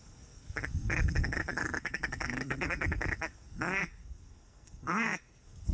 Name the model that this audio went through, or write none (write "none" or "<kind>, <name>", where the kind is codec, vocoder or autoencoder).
codec, SNAC